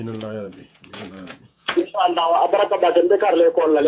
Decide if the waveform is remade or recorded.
remade